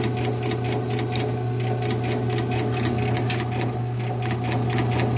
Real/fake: real